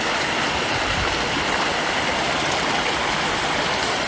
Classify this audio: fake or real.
real